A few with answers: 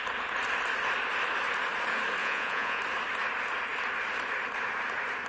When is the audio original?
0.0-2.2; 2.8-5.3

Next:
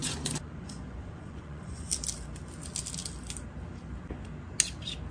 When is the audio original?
1.9-5.1

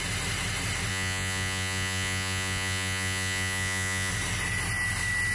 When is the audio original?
0.0-0.9; 4.1-5.3

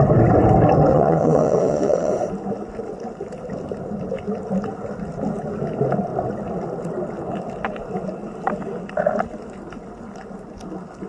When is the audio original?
0.0-0.9; 2.1-11.1

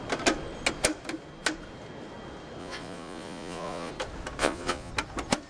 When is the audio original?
0.0-2.6; 3.9-4.4; 4.9-5.5

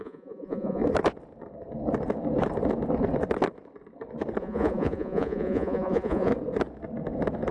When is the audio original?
0.8-4.4; 6.3-7.5